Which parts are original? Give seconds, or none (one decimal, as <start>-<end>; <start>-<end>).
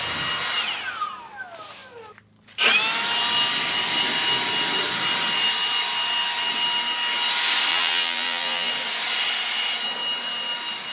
0.0-7.7; 8.7-10.9